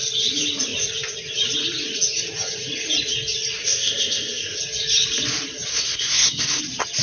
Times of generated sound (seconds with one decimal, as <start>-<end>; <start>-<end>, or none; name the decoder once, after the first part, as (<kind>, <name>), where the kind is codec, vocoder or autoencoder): 3.6-4.6 (codec, SNAC); 5.7-6.6